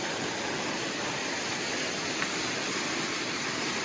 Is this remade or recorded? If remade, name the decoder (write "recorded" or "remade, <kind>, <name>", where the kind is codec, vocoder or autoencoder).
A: recorded